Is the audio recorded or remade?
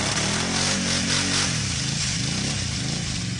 recorded